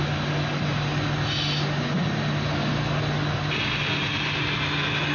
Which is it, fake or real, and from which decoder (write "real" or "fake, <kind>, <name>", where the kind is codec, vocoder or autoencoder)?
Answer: real